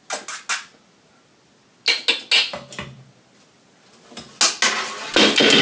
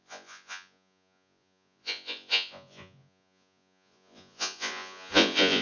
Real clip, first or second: first